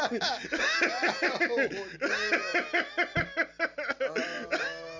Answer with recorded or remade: recorded